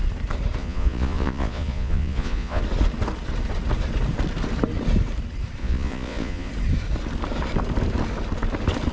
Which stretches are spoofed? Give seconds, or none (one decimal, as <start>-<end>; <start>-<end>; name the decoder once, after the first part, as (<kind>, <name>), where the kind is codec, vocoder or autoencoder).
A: 0.6-2.6 (vocoder, Vocos); 5.6-6.5